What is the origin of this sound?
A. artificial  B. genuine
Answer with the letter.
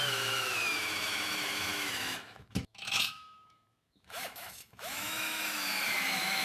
A